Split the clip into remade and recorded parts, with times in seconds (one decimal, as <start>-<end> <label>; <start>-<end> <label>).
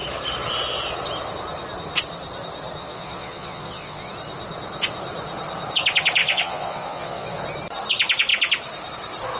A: 0.0-2.8 recorded; 2.8-4.1 remade; 4.1-6.2 recorded; 6.2-7.4 remade; 7.4-9.4 recorded